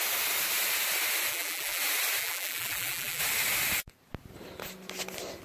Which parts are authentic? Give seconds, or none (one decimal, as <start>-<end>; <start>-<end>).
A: 0.0-1.3; 1.8-2.2; 3.2-5.4